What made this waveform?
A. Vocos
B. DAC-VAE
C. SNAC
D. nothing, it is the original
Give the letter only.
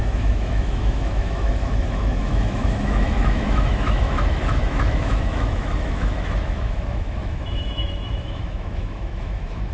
B